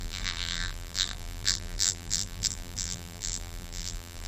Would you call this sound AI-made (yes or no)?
yes